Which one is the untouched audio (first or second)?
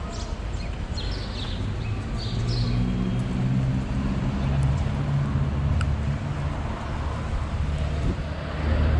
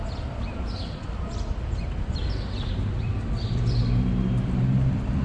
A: first